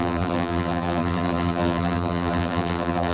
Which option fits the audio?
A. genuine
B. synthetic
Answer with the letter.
B